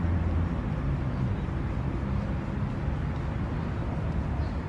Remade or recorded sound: recorded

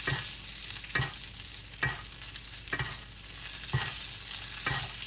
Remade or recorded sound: recorded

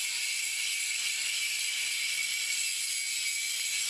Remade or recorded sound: recorded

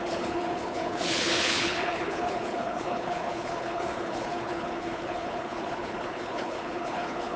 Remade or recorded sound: remade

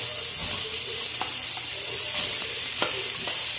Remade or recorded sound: recorded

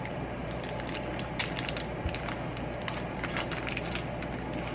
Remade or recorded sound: recorded